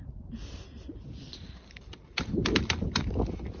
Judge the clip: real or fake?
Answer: real